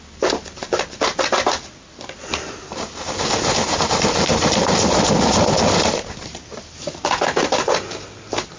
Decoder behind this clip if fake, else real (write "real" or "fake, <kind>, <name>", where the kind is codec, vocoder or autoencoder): real